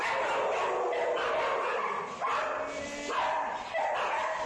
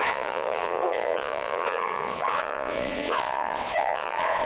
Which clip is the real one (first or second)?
first